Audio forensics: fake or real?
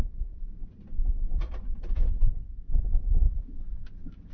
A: real